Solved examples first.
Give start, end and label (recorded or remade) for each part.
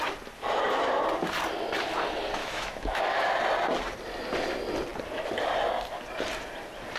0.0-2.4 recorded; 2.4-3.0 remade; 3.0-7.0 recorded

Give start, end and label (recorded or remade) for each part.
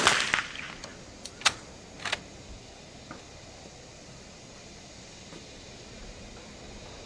0.0-0.9 recorded; 0.9-1.8 remade; 1.8-2.3 recorded; 2.3-6.6 remade; 6.6-7.1 recorded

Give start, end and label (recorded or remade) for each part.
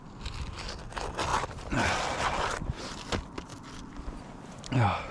0.0-5.1 recorded